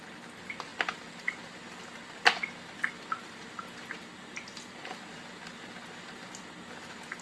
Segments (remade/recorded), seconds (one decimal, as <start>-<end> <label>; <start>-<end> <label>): 0.0-7.2 recorded